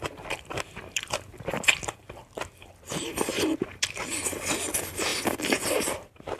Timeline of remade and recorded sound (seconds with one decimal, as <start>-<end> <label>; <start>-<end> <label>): 0.0-3.3 remade; 3.3-4.6 recorded; 4.6-6.4 remade